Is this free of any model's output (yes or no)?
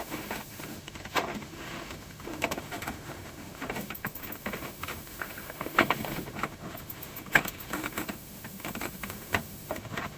no